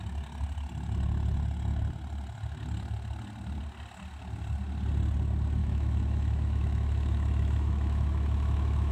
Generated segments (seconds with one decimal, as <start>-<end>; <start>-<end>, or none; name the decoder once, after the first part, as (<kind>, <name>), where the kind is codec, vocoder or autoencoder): 5.6-8.9 (autoencoder, DAC-VAE)